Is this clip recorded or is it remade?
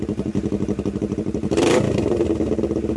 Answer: recorded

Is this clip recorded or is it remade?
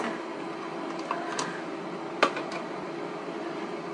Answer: recorded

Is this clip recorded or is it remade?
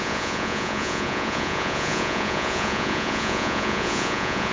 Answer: remade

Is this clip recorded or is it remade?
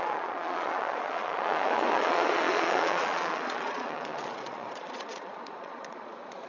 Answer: remade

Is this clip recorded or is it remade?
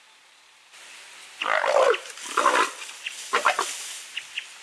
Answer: recorded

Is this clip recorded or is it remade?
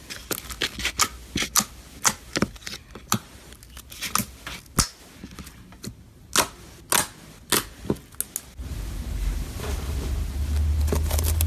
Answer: recorded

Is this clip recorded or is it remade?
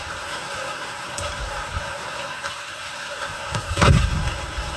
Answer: remade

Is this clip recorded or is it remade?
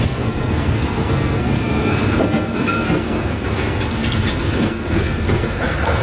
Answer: remade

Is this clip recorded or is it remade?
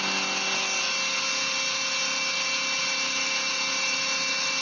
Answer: recorded